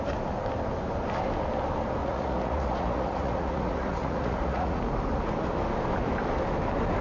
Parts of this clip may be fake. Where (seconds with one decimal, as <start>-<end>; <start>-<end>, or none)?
2.0-4.8

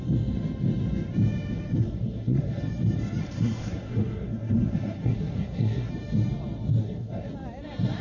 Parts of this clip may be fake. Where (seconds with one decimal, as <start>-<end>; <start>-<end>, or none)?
1.8-2.6; 3.2-5.9; 6.8-7.3